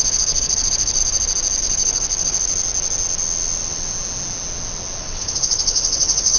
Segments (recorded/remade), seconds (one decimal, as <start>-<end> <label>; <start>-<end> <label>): 0.0-1.0 remade; 1.0-1.6 recorded; 1.6-2.5 remade; 2.5-5.0 recorded; 5.0-6.4 remade